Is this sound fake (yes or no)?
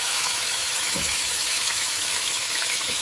yes